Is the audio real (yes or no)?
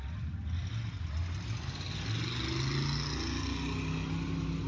yes